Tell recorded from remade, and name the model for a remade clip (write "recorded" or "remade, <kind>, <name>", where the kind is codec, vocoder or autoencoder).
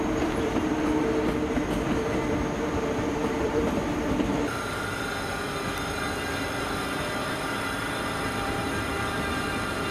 remade, vocoder, BigVGAN v2